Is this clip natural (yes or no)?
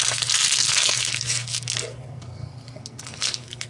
no